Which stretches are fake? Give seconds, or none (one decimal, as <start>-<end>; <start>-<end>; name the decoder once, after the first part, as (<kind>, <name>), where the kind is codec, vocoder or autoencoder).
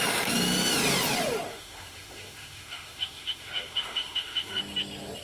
1.5-4.6 (autoencoder, DAC-VAE)